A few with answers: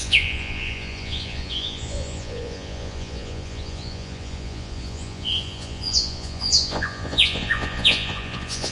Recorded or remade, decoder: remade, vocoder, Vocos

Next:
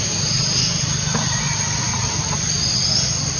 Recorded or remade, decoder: recorded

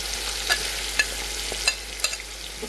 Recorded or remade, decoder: recorded